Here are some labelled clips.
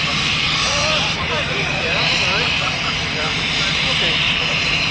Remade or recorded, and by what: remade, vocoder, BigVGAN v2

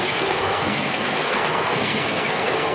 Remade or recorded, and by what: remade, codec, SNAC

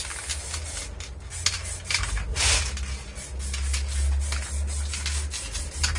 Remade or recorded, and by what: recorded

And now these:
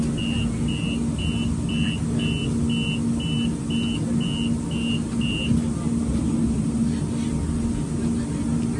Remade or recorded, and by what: recorded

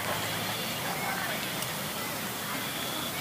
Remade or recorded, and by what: remade, vocoder, BigVGAN v2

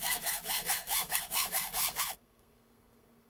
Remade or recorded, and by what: remade, codec, SNAC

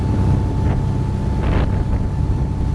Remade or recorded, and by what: recorded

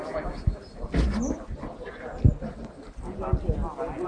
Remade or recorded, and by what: recorded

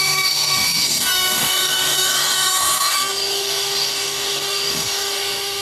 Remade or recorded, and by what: remade, codec, DAC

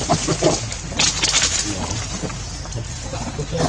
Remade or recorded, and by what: recorded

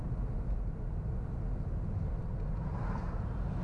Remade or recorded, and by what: recorded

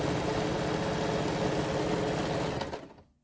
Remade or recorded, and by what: recorded